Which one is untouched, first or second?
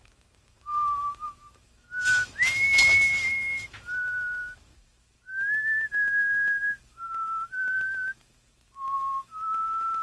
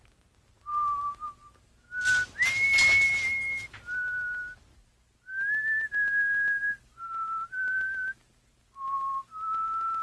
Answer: second